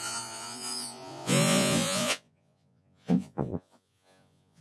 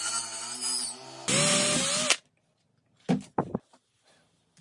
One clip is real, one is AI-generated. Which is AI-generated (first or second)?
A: first